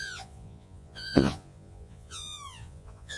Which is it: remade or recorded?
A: remade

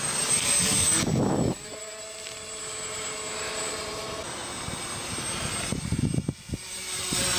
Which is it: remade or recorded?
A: recorded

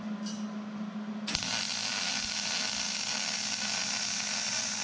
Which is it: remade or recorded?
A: recorded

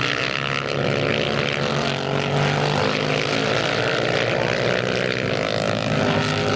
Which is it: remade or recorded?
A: recorded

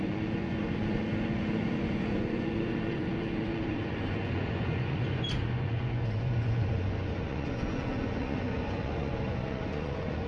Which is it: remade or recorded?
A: remade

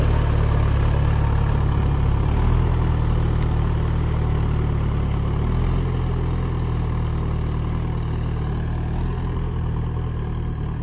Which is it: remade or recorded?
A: recorded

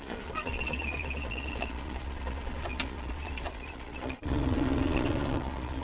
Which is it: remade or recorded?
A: remade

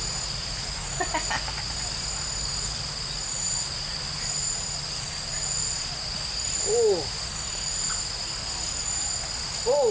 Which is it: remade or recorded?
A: recorded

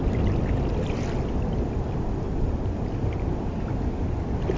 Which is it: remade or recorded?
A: recorded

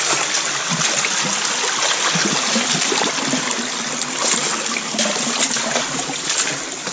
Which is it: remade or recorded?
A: recorded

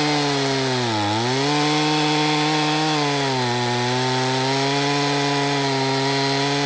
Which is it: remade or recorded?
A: recorded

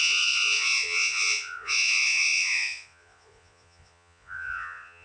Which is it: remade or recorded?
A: remade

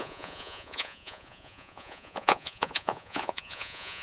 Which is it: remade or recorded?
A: remade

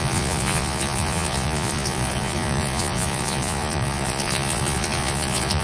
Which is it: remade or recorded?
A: remade